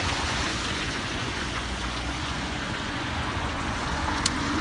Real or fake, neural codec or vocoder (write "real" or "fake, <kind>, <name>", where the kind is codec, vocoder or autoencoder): fake, vocoder, Vocos